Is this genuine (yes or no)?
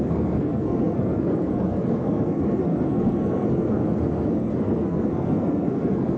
no